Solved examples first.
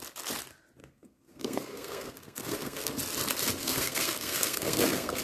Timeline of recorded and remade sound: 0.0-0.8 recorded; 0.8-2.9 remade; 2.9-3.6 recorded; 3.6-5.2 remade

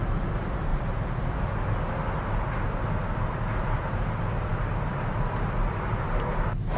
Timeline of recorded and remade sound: 0.0-6.8 recorded

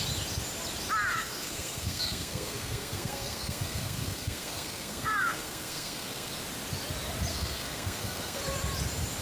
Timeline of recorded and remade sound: 0.0-1.1 recorded; 1.1-6.3 remade; 6.3-7.3 recorded; 7.3-8.4 remade; 8.4-9.2 recorded

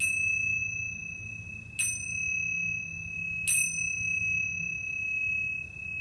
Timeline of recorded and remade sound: 0.0-6.0 recorded